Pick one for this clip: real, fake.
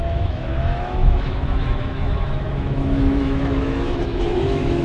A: fake